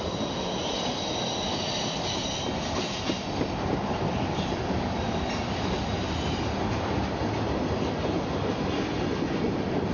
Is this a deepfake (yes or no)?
no